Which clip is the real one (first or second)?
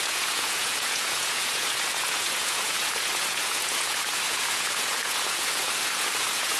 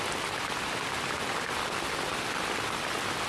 second